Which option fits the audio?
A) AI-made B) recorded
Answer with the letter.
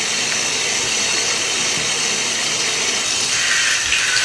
B